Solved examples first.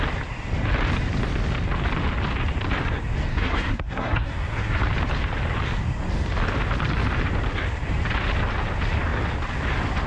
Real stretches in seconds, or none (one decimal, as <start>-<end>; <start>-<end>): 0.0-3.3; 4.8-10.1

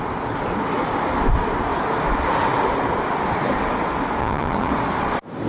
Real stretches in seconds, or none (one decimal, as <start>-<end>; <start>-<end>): 0.0-4.2; 4.7-5.5

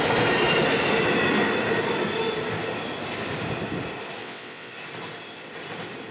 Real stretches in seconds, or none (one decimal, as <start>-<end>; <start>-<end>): 0.0-4.2; 4.7-6.1

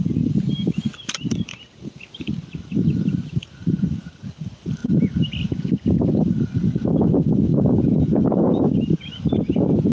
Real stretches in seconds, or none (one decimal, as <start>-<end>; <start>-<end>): 0.0-9.9

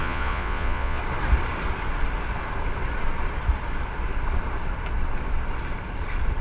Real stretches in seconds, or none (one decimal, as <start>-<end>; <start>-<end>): 1.0-6.4